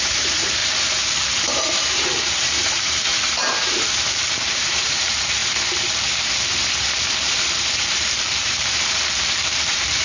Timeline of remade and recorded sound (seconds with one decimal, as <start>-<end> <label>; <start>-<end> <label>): 0.0-5.4 remade; 5.4-7.9 recorded; 7.9-10.0 remade